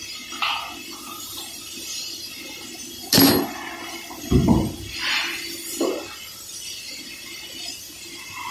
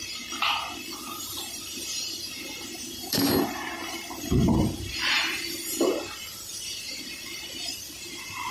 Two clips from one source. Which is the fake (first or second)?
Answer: second